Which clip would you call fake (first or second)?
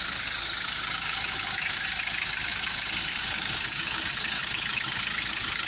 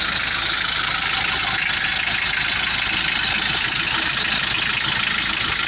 first